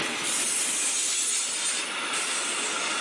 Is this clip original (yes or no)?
yes